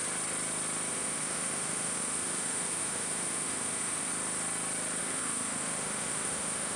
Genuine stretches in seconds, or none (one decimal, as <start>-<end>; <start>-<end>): 0.0-0.9; 4.1-5.0

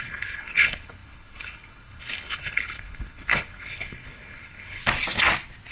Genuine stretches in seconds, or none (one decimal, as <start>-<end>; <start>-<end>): 4.8-5.7

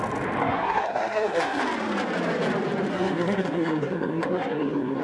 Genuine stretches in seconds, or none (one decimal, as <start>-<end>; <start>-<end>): 0.0-0.4; 1.6-2.9

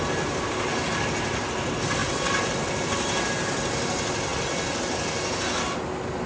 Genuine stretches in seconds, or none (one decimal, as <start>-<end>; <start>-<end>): 0.0-6.3

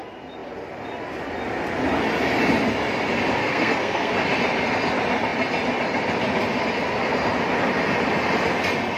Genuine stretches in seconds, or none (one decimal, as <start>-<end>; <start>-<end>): 0.0-3.4; 4.1-9.0

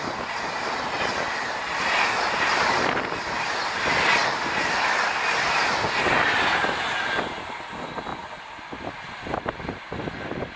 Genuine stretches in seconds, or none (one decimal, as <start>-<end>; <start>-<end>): 0.0-10.6

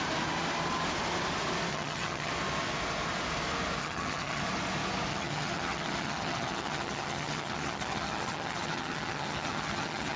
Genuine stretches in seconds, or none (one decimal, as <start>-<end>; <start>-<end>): 0.0-1.7; 2.3-3.8; 4.4-5.1